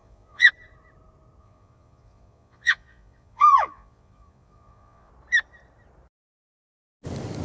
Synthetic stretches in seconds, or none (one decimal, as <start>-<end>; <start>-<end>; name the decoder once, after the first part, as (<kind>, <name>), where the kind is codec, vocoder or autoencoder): 0.0-0.5 (vocoder, Vocos); 1.4-5.1